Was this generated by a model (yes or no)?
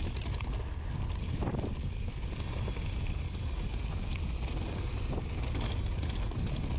no